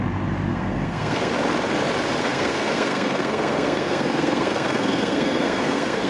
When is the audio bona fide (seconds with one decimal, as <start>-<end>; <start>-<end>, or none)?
0.0-0.5; 1.3-2.2